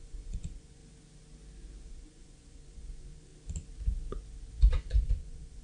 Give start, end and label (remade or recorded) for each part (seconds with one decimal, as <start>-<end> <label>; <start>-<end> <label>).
0.0-0.8 remade; 0.8-1.9 recorded; 1.9-3.3 remade; 3.3-4.6 recorded; 4.6-5.6 remade

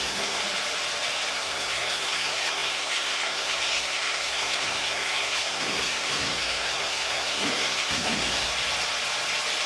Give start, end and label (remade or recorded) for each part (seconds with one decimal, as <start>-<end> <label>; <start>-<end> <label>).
0.0-0.4 remade; 0.4-1.3 recorded; 1.3-8.5 remade; 8.5-9.7 recorded

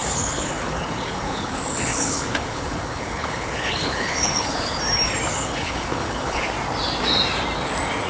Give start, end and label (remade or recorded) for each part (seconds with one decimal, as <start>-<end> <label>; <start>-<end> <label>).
0.0-4.8 remade; 4.8-5.3 recorded; 5.3-6.4 remade; 6.4-8.1 recorded

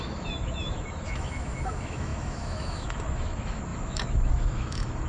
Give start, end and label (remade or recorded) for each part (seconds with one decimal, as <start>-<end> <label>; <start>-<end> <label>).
0.0-5.1 remade

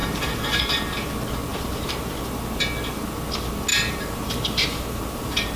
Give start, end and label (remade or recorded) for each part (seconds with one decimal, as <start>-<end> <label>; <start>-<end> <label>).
0.0-0.6 remade; 0.6-1.5 recorded; 1.5-2.1 remade; 2.1-3.7 recorded; 3.7-5.6 remade

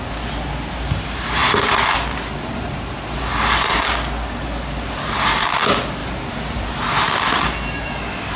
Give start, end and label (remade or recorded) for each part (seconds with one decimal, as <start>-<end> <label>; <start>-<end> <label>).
0.0-1.4 recorded; 1.4-2.8 remade; 2.8-6.0 recorded; 6.0-6.8 remade; 6.8-8.4 recorded

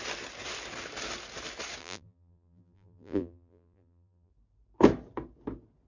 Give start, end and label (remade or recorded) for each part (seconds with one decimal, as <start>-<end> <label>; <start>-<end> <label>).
0.0-1.8 recorded; 1.8-4.3 remade; 4.3-5.9 recorded